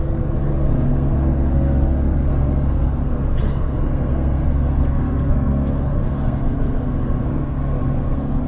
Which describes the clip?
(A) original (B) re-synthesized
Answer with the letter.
B